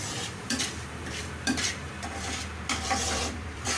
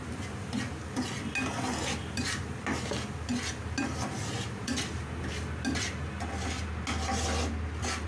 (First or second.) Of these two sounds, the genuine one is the second